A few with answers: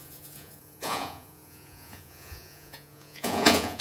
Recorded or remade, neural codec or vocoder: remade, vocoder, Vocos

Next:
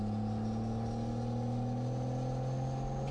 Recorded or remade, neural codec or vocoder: recorded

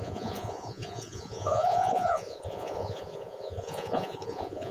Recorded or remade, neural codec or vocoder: remade, vocoder, Vocos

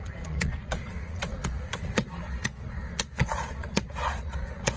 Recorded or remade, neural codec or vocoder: remade, vocoder, Vocos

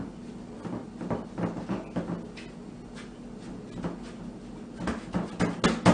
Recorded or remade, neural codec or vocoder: recorded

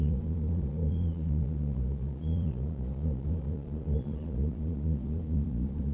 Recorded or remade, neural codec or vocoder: remade, vocoder, Vocos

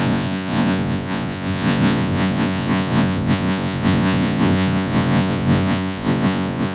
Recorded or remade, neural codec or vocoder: remade, vocoder, Vocos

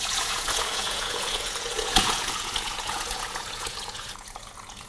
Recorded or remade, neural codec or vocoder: remade, vocoder, Vocos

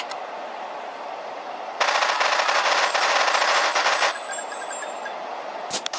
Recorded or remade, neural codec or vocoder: recorded